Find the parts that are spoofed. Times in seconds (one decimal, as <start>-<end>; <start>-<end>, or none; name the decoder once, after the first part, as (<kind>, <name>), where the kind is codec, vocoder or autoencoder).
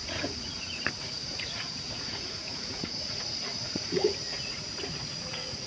0.0-5.7 (vocoder, Vocos)